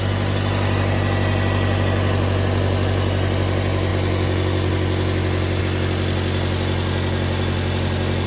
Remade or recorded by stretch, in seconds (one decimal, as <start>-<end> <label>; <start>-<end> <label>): 0.0-8.3 recorded